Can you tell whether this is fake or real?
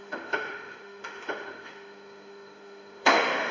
fake